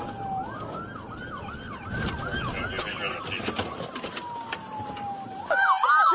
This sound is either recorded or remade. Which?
recorded